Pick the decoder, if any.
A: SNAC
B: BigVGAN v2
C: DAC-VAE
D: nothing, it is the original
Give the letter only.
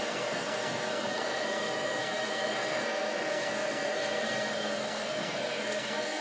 A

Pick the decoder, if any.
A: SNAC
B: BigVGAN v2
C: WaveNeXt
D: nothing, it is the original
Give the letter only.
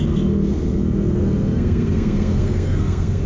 A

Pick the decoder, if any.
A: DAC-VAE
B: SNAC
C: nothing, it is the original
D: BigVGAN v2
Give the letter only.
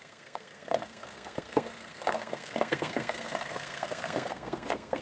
B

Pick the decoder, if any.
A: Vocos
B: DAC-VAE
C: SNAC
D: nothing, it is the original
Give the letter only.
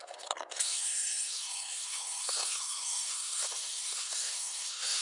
C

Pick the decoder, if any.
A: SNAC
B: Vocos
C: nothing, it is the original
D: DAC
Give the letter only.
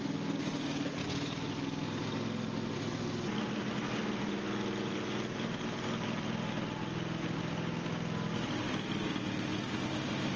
C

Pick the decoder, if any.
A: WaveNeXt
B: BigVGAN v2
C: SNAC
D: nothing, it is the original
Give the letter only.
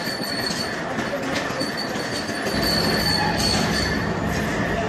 D